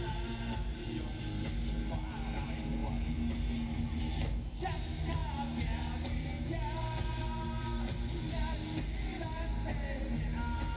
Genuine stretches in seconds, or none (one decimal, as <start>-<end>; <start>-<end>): 0.0-10.8